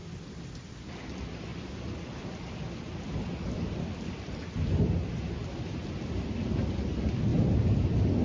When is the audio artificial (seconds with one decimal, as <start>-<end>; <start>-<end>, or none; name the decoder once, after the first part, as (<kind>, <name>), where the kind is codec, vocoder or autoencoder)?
none